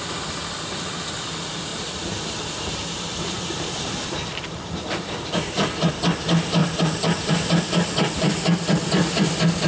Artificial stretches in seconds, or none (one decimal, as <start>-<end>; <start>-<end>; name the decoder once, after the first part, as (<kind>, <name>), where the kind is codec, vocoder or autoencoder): 1.7-5.9 (vocoder, BigVGAN v2); 6.6-7.3